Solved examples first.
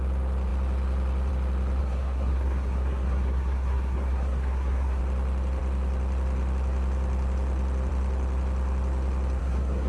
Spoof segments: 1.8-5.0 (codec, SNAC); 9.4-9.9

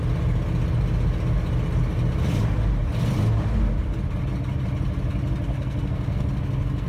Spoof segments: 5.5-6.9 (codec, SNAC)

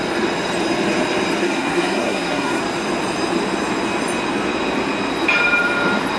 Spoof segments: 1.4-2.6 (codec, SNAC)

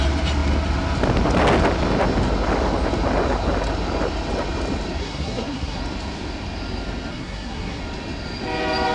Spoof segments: 5.0-5.8 (codec, SNAC); 7.1-7.8